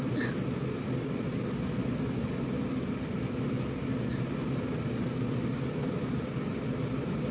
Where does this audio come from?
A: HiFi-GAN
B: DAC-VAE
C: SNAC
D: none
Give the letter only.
D